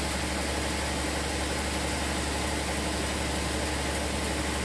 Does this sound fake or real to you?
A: real